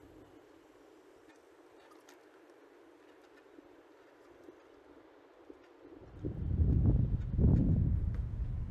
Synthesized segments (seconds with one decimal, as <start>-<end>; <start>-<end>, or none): 7.6-8.7

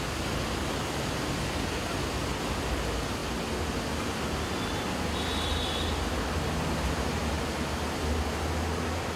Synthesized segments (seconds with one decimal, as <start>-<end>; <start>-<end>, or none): none

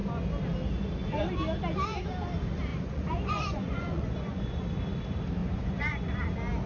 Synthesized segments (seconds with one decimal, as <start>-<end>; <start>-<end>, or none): 2.7-4.6; 5.4-6.2

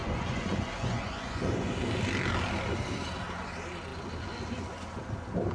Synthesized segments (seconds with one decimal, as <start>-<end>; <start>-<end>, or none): 0.0-1.7

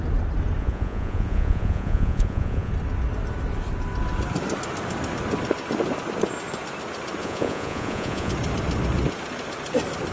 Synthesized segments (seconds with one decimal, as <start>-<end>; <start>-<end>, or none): 0.6-2.7; 7.2-8.3

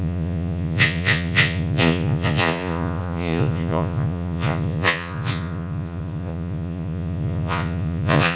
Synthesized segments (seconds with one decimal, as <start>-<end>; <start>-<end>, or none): 0.0-8.4